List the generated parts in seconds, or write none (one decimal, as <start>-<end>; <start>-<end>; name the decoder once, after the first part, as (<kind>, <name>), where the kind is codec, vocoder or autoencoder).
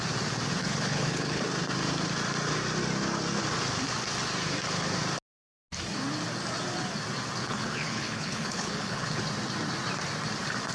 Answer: 0.6-1.4 (codec, HILCodec); 7.4-9.2